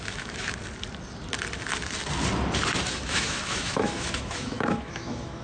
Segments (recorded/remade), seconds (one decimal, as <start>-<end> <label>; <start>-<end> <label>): 0.0-0.6 remade; 0.6-2.9 recorded; 2.9-5.4 remade